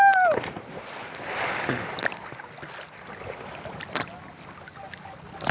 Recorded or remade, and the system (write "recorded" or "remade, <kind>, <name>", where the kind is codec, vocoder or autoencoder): recorded